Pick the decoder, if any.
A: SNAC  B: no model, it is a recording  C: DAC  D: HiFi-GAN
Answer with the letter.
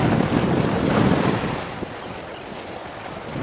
B